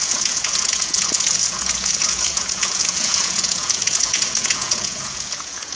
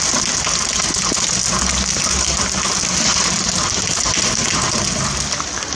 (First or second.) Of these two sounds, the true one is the second